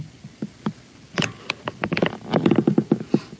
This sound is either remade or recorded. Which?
recorded